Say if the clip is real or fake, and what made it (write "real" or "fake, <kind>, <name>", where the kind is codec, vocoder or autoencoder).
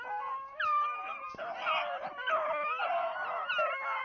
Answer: real